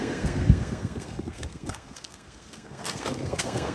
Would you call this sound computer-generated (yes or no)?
yes